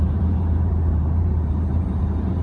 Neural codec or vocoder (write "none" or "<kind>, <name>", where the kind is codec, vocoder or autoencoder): vocoder, BigVGAN v2